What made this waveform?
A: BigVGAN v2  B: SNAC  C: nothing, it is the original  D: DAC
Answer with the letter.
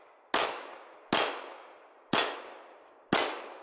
C